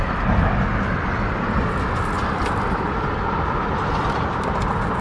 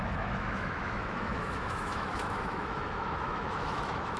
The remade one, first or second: second